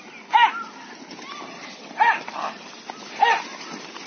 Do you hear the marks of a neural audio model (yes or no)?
no